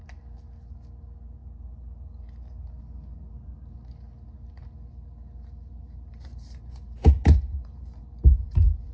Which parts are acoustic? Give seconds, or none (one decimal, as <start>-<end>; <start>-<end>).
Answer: 0.0-1.4; 2.8-6.3; 8.0-8.9